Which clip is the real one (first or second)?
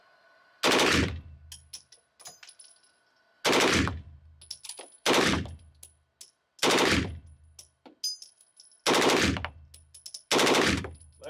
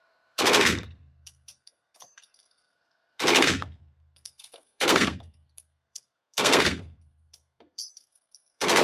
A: first